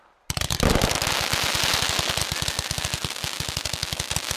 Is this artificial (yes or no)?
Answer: no